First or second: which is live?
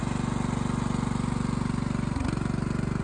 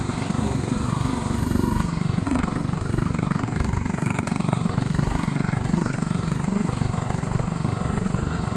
first